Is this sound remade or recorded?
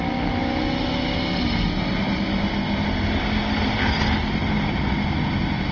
recorded